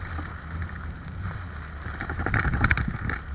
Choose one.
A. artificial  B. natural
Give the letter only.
B